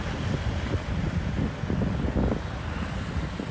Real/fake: real